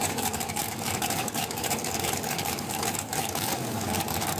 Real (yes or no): no